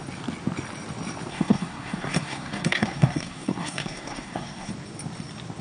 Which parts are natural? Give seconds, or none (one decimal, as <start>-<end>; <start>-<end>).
0.0-1.3; 4.7-5.6